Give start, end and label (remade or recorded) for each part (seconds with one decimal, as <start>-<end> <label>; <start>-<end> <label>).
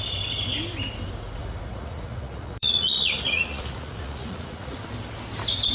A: 0.0-1.4 recorded; 1.4-4.8 remade; 4.8-5.7 recorded